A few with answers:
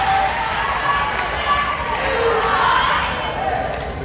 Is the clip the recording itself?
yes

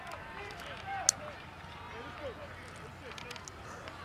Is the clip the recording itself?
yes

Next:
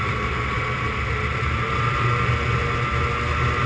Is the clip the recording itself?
yes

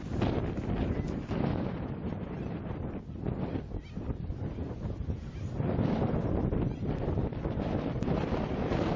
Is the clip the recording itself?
no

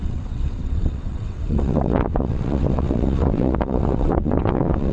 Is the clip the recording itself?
no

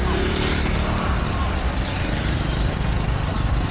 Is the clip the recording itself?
yes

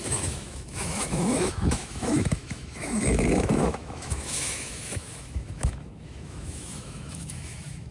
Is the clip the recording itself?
no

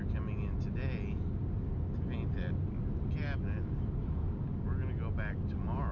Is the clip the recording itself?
yes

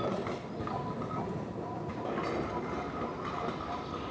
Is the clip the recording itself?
yes